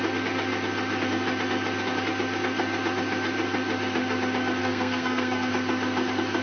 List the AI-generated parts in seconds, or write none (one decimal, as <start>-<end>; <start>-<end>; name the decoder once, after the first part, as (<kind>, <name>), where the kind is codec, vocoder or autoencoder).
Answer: 4.6-5.5 (codec, SNAC)